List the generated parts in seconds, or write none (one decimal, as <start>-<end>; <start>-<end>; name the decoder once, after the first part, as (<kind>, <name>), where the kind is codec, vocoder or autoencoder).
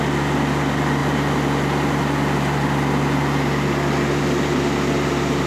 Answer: none